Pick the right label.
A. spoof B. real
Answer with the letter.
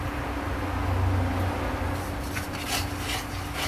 B